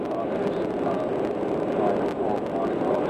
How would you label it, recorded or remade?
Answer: recorded